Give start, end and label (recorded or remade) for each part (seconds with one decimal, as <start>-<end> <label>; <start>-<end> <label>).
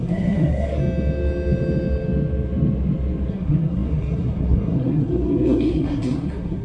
0.0-0.8 remade; 0.8-3.3 recorded; 3.3-6.6 remade